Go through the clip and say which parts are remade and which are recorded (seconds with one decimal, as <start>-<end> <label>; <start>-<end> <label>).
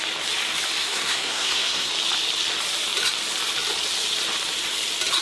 0.0-0.8 recorded; 0.8-1.9 remade; 1.9-5.2 recorded